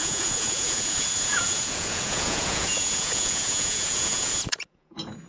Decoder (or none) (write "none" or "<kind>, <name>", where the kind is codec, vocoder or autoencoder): vocoder, Vocos